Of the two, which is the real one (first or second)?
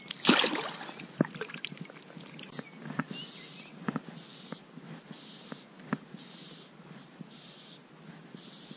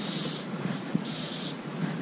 first